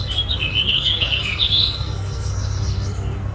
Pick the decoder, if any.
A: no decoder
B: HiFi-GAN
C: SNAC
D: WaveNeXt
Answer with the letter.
C